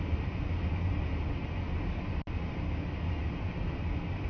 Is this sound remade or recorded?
recorded